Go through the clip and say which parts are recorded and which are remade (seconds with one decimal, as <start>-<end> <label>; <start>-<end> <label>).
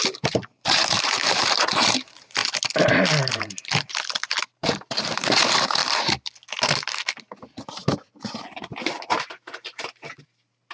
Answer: 0.0-2.4 remade; 2.4-3.3 recorded; 3.3-5.8 remade; 5.8-8.2 recorded; 8.2-10.7 remade